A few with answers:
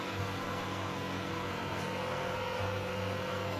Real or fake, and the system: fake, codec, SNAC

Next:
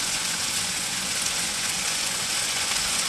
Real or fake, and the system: fake, vocoder, Vocos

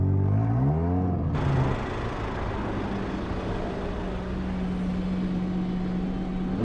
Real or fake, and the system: real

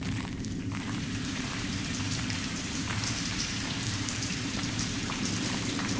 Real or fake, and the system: fake, vocoder, BigVGAN v2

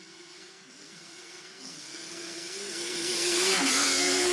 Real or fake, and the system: fake, codec, SNAC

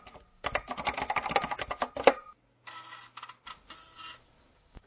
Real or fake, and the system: real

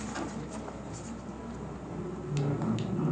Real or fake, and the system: real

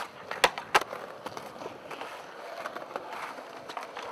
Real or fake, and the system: real